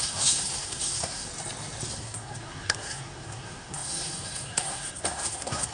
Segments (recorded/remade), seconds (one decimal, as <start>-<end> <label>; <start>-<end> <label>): 0.0-1.3 remade; 1.3-1.9 recorded; 1.9-5.7 remade